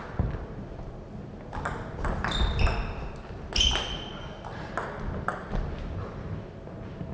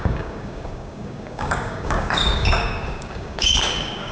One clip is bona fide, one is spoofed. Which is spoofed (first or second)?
second